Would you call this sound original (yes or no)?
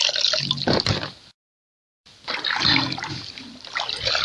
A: no